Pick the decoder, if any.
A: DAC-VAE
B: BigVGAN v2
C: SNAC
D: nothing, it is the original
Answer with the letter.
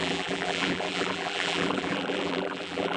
B